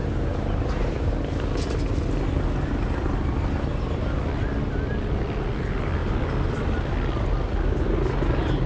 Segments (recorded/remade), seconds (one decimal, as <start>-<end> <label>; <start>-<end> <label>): 0.0-8.7 recorded